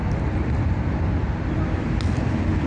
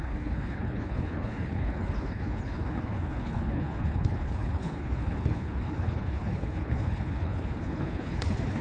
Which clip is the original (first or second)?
first